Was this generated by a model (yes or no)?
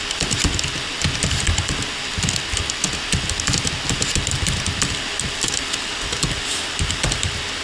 no